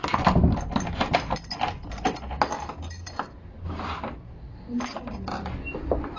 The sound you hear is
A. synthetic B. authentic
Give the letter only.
B